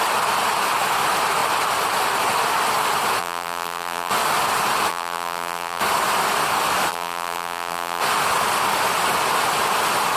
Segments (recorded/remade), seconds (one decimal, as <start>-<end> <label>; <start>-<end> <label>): 0.0-3.2 recorded; 3.2-4.1 remade; 4.1-4.9 recorded; 4.9-5.8 remade; 5.8-6.9 recorded; 6.9-8.0 remade; 8.0-10.2 recorded